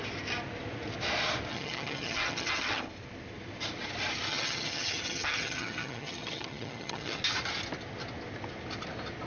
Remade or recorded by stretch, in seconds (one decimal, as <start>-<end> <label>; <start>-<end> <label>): 0.0-1.5 recorded; 1.5-2.8 remade; 2.8-4.3 recorded; 4.3-7.2 remade; 7.2-9.3 recorded